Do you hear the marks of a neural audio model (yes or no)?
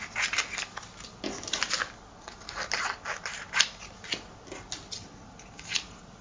no